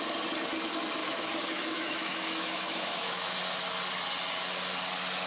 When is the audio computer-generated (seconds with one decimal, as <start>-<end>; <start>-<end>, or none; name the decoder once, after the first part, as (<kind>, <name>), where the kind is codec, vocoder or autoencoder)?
1.0-3.3 (autoencoder, DAC-VAE)